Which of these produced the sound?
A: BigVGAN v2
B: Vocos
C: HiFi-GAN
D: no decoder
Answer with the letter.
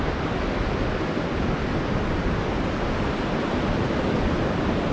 D